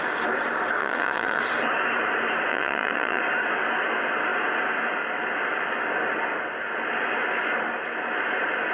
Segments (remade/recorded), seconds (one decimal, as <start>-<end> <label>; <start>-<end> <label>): 0.0-0.8 recorded; 0.8-1.4 remade; 1.4-2.5 recorded; 2.5-3.2 remade; 3.2-8.7 recorded